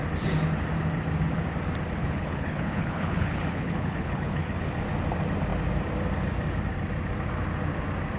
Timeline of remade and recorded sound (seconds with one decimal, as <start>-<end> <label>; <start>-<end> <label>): 0.0-2.0 recorded; 2.0-4.6 remade; 4.6-8.2 recorded